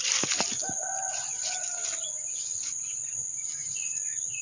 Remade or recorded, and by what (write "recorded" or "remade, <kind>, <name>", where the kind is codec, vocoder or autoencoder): recorded